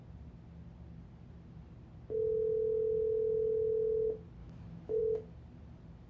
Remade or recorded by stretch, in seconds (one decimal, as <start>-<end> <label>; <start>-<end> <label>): 0.0-4.4 recorded; 4.4-5.0 remade; 5.0-6.1 recorded